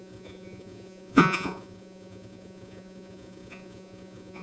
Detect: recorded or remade remade